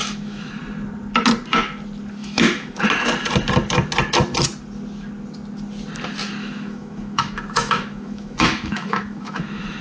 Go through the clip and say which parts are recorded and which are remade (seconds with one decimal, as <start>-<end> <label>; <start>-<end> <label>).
0.0-0.6 remade; 0.6-2.2 recorded; 2.2-2.8 remade; 2.8-6.4 recorded; 6.4-9.8 remade